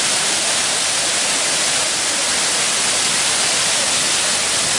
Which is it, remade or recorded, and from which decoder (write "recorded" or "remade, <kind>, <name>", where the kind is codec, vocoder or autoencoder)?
recorded